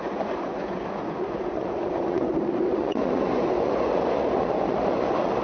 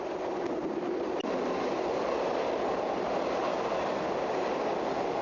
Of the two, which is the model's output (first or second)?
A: first